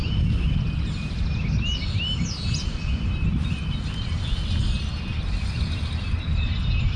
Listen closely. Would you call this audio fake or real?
real